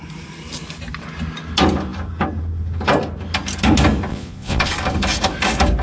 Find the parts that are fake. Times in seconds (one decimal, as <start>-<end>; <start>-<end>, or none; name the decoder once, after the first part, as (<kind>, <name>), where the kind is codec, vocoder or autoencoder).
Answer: 4.1-4.6 (vocoder, Vocos)